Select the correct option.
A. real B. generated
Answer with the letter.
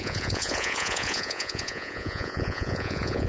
B